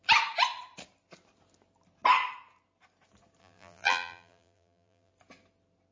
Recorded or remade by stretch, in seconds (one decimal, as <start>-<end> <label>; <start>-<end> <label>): 0.0-3.4 recorded; 3.4-5.1 remade; 5.1-5.9 recorded